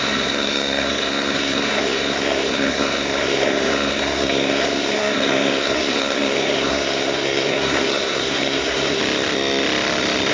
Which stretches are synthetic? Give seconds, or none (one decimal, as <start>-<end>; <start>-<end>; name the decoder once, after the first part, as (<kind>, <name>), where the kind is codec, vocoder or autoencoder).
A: 0.0-9.0 (codec, SNAC)